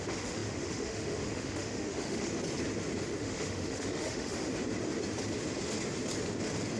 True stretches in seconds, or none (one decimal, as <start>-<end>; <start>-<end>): 2.3-3.2; 4.5-6.8